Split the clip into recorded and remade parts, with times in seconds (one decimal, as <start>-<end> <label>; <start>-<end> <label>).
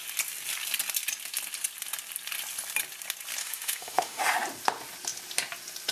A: 0.0-3.4 recorded; 3.4-4.2 remade; 4.2-5.9 recorded